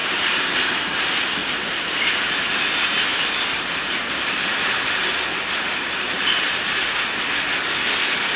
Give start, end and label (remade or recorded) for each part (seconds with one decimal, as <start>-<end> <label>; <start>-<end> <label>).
0.0-8.4 recorded